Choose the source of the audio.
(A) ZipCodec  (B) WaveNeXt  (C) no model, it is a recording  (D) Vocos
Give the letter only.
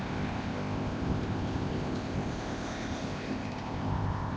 A